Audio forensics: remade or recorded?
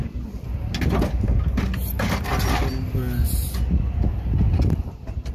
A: recorded